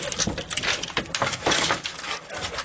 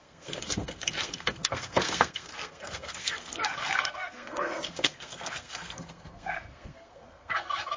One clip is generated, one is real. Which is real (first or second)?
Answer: first